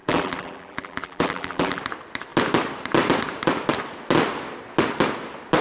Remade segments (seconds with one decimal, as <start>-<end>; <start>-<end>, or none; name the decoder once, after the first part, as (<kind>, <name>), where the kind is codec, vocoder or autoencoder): 0.0-1.8 (vocoder, BigVGAN v2)